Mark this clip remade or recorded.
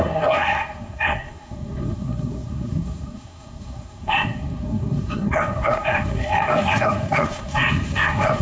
remade